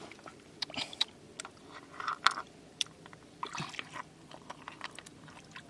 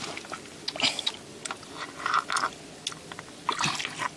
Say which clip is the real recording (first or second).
second